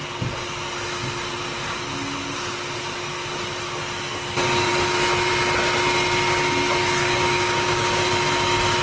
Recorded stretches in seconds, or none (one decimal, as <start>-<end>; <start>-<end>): 0.0-7.0; 8.1-8.8